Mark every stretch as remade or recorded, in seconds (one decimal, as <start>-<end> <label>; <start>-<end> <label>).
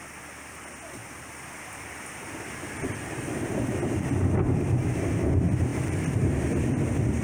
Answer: 0.0-5.7 recorded; 5.7-6.3 remade; 6.3-7.2 recorded